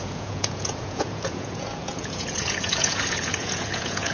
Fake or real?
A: fake